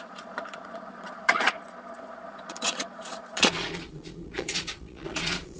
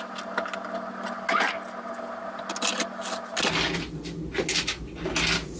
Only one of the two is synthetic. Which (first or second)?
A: first